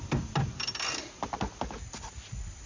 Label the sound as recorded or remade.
recorded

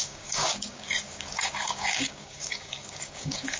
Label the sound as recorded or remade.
remade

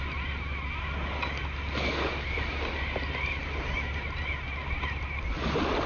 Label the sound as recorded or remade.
recorded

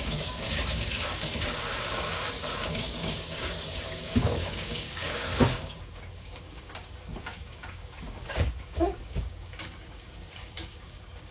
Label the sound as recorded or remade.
remade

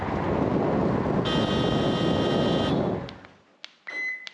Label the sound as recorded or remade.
recorded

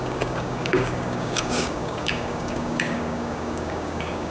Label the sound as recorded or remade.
remade